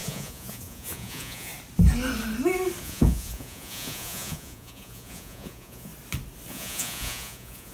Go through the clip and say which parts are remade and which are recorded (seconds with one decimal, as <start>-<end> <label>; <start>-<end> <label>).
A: 0.0-1.5 remade; 1.5-2.8 recorded; 2.8-5.9 remade; 5.9-6.5 recorded; 6.5-7.7 remade